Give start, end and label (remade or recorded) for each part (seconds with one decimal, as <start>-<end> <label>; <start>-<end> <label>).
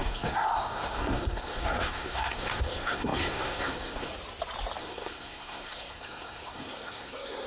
0.0-4.1 remade; 4.1-4.8 recorded; 4.8-7.5 remade